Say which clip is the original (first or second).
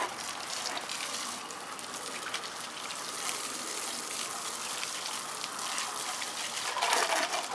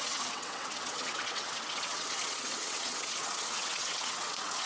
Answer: first